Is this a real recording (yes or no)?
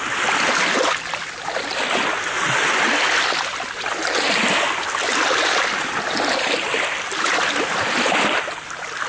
yes